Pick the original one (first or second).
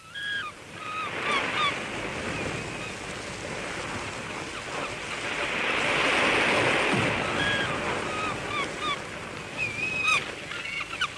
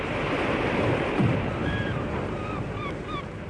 first